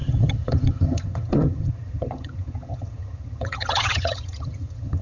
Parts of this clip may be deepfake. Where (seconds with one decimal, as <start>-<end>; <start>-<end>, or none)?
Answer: 0.0-5.0